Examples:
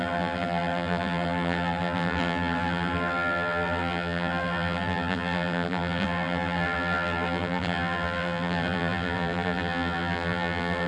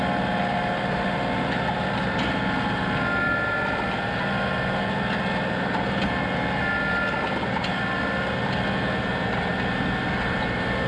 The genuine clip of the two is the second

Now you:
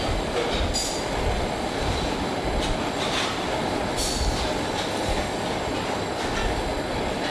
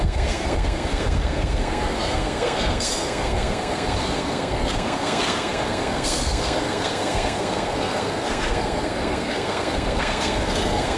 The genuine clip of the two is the first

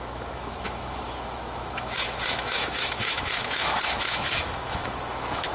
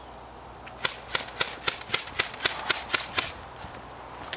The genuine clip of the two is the second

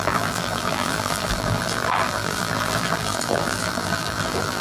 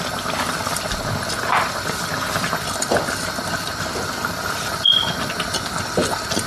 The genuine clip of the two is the second